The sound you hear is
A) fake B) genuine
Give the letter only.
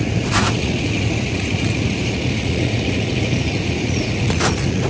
A